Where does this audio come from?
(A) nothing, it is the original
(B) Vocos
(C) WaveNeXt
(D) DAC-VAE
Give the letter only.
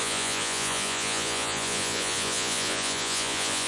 B